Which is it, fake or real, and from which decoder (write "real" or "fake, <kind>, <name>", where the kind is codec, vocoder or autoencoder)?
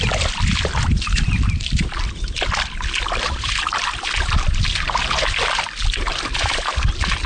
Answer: real